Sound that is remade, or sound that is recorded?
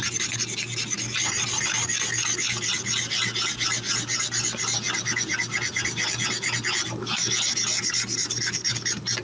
recorded